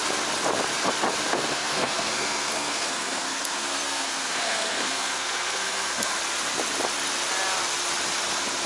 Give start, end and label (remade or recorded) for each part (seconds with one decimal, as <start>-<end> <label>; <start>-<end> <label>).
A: 0.0-1.3 recorded; 1.3-6.1 remade; 6.1-8.7 recorded